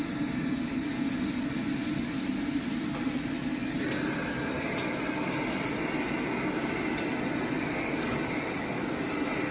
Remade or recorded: recorded